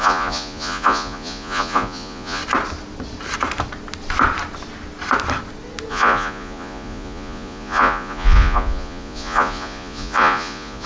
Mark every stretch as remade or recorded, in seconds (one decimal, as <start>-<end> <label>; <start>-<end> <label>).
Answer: 0.0-2.4 remade; 2.4-5.9 recorded; 5.9-10.9 remade